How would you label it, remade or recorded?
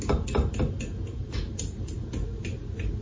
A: recorded